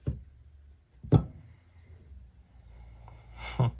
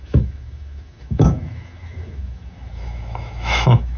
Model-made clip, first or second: second